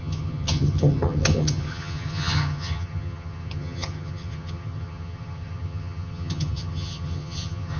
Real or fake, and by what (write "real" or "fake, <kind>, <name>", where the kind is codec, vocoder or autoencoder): fake, vocoder, HiFi-GAN